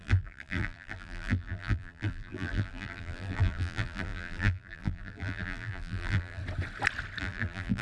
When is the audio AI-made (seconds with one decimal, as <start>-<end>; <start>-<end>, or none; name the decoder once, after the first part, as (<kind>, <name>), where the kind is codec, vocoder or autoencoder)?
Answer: 0.0-6.4 (vocoder, BigVGAN v2); 7.2-7.8